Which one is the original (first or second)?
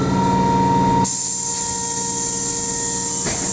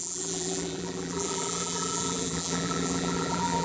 first